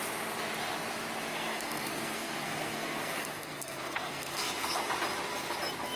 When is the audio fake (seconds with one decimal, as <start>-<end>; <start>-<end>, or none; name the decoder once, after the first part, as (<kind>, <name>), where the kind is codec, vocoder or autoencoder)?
1.3-4.9 (codec, SNAC)